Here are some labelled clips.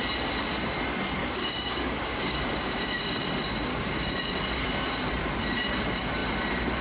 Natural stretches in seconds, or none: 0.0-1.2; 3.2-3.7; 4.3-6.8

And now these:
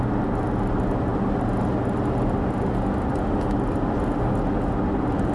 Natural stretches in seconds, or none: 0.0-5.3